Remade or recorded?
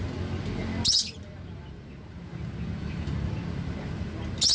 recorded